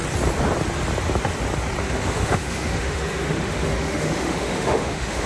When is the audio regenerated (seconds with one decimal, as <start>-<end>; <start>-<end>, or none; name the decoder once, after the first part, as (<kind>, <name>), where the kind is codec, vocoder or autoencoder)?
1.8-5.3 (autoencoder, DAC-VAE)